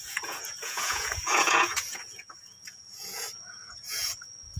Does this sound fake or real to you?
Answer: fake